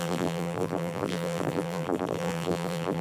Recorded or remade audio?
remade